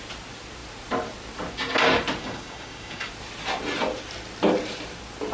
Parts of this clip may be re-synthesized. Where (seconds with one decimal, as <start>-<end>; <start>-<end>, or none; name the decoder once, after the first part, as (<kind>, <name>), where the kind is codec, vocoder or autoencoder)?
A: 2.2-3.1 (codec, DAC)